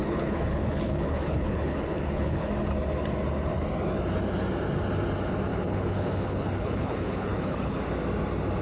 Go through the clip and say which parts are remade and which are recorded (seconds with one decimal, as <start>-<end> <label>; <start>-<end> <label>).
0.0-2.5 remade; 2.5-5.5 recorded; 5.5-7.8 remade; 7.8-8.6 recorded